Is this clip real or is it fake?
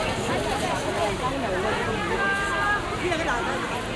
real